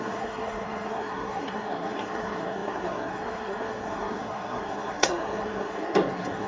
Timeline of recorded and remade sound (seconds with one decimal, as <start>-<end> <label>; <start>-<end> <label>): 0.0-6.5 remade